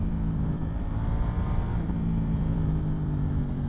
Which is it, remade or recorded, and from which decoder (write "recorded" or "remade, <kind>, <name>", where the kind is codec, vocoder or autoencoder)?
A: remade, vocoder, BigVGAN v2